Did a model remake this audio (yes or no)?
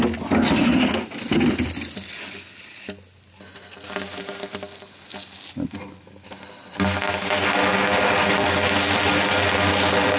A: no